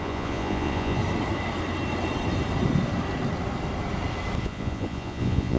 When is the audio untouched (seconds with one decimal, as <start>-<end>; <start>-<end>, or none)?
1.0-4.4